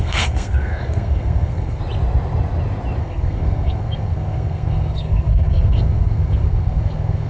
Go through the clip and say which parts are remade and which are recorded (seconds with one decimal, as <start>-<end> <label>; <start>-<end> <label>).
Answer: 0.0-1.8 remade; 1.8-3.0 recorded; 3.0-7.3 remade